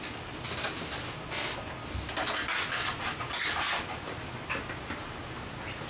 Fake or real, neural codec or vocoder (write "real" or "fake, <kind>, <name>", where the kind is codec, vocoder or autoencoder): real